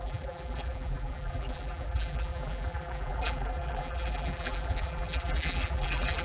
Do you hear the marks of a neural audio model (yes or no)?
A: yes